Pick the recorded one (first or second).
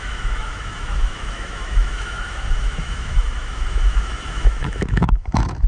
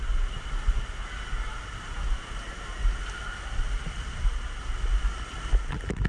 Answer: second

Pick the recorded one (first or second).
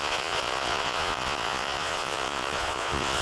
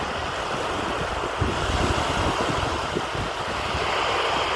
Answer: second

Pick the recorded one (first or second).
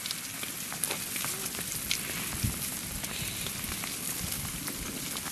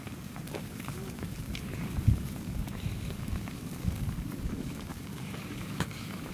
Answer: first